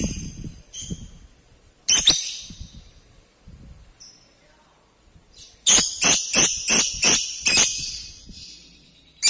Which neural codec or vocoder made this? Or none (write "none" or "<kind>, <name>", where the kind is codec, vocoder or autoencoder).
vocoder, BigVGAN v2